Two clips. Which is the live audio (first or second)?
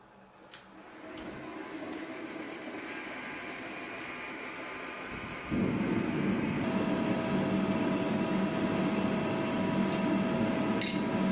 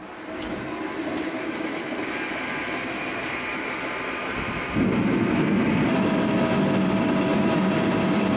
first